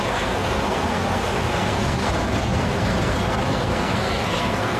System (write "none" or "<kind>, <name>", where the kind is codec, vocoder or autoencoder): codec, SNAC